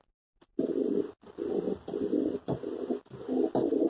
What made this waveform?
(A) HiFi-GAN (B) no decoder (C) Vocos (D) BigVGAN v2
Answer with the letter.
B